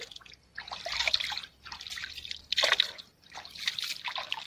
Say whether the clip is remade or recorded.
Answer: recorded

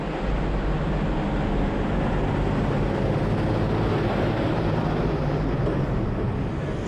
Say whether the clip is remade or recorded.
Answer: recorded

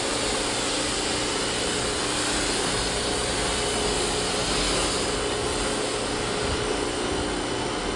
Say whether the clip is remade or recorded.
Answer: recorded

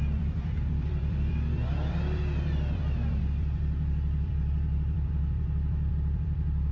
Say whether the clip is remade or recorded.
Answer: remade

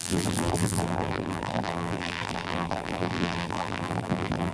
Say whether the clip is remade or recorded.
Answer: remade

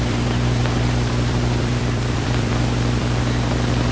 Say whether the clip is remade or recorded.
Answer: remade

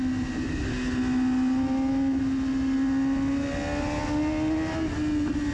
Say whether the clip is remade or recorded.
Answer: recorded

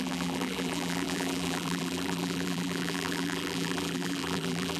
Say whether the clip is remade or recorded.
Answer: remade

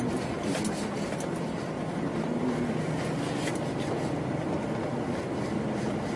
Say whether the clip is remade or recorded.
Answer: recorded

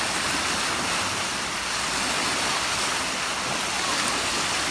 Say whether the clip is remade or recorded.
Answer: recorded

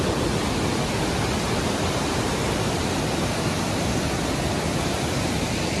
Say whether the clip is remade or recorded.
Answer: recorded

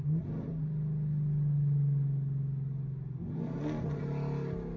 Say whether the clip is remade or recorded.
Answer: recorded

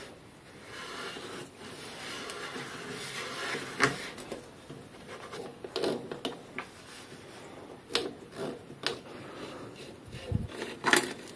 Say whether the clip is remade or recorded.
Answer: recorded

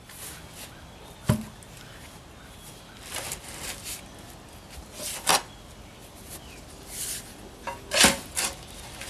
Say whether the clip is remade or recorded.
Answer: recorded